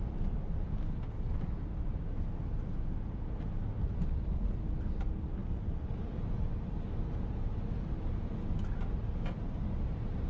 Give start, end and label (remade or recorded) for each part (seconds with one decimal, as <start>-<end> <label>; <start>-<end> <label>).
0.0-5.4 recorded; 5.4-8.5 remade; 8.5-10.3 recorded